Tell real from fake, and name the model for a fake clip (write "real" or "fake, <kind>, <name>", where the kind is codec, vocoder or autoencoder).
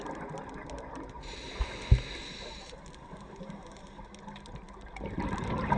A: real